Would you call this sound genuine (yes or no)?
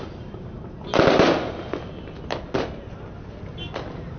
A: yes